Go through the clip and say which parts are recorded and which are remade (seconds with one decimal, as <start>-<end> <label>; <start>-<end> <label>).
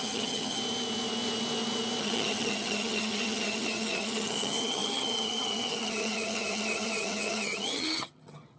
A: 0.0-0.6 remade; 0.6-2.0 recorded; 2.0-8.6 remade